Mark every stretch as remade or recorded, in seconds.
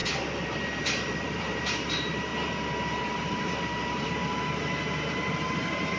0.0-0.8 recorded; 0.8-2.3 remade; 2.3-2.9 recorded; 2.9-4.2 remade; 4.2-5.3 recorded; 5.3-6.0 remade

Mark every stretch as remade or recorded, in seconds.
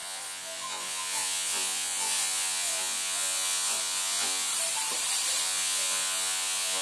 0.0-4.5 remade; 4.5-5.4 recorded; 5.4-6.8 remade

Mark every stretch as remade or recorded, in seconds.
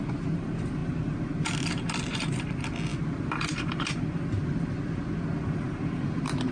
0.0-6.5 recorded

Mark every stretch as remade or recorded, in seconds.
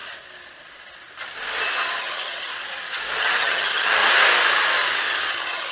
0.0-2.0 recorded; 2.0-2.5 remade; 2.5-3.2 recorded; 3.2-4.0 remade; 4.0-5.3 recorded; 5.3-5.7 remade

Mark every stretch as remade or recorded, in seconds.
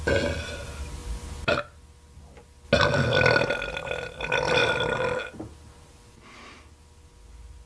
0.0-7.7 recorded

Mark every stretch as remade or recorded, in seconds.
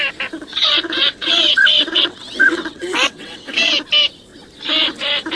0.0-0.5 recorded; 0.5-3.7 remade; 3.7-5.4 recorded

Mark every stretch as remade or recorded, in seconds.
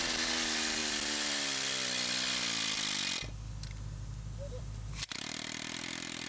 0.0-6.3 recorded